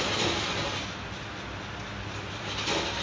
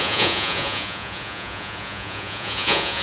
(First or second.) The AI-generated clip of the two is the second